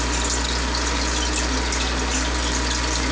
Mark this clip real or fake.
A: real